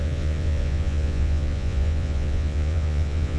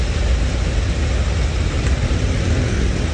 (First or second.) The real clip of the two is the second